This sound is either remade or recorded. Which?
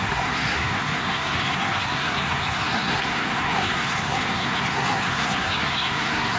remade